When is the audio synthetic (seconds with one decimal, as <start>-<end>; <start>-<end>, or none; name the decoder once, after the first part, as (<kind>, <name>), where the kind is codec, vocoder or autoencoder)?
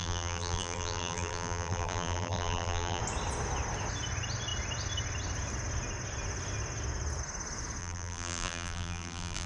0.0-3.0 (vocoder, BigVGAN v2); 7.8-9.5